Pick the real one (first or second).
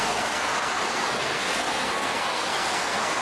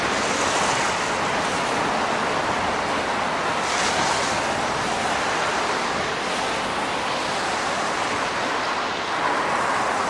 second